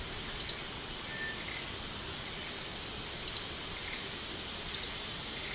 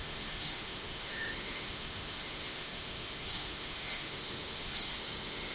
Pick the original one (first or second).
first